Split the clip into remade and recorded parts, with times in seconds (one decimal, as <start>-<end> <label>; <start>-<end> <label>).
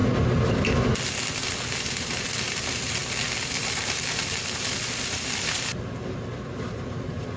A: 0.0-1.7 recorded; 1.7-3.0 remade; 3.0-3.6 recorded; 3.6-7.4 remade